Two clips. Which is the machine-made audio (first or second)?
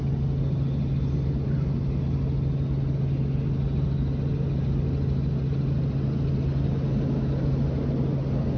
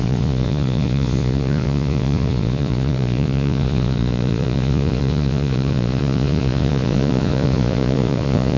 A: second